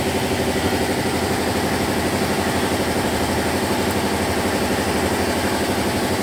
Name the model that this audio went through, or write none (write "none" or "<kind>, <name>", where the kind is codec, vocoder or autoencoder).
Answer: none